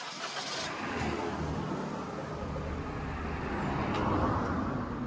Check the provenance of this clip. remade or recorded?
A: recorded